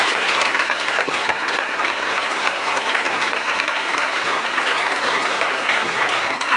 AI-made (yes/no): yes